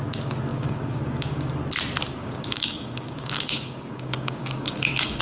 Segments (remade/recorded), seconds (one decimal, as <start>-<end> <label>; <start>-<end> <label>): 0.0-0.5 recorded; 0.5-1.5 remade; 1.5-2.1 recorded; 2.1-5.2 remade